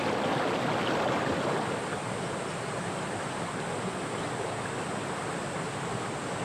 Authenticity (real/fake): real